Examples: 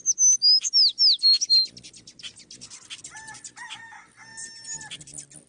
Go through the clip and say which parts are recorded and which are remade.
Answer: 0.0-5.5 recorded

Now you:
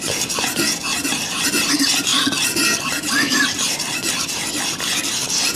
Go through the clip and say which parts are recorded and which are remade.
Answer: 0.0-5.6 recorded